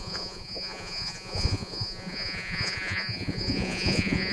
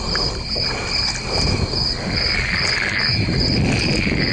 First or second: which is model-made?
first